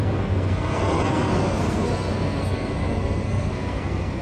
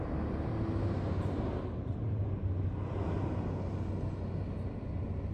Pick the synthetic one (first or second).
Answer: first